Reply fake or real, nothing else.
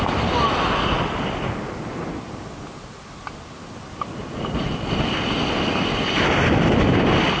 real